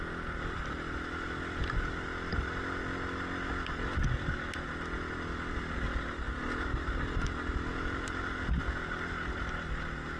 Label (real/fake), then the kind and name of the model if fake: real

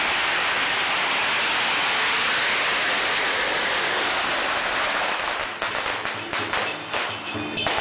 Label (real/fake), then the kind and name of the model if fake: real